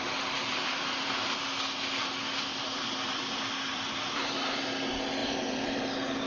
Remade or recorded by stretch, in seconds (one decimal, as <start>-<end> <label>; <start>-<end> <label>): 0.0-0.5 recorded; 0.5-1.5 remade; 1.5-2.5 recorded; 2.5-4.6 remade; 4.6-5.2 recorded; 5.2-5.8 remade; 5.8-6.3 recorded